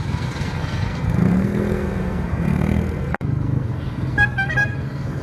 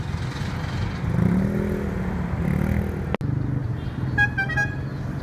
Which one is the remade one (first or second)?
first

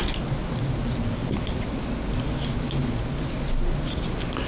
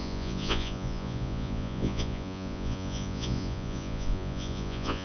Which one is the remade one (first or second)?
second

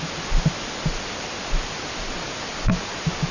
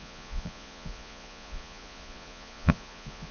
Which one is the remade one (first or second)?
second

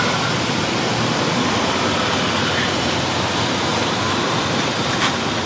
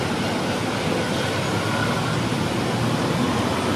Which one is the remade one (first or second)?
first